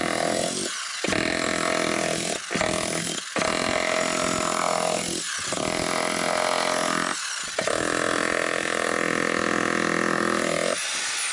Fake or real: real